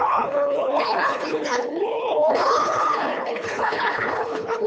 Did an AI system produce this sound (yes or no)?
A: yes